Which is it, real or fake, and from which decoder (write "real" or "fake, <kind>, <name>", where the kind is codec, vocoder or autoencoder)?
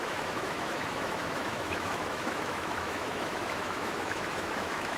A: fake, autoencoder, DAC-VAE